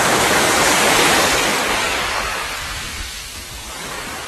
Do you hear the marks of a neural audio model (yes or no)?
yes